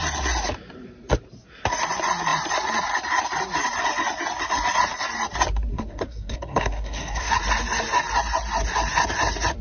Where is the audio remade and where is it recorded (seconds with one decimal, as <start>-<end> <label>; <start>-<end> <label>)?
0.0-5.7 recorded; 5.7-7.3 remade; 7.3-9.6 recorded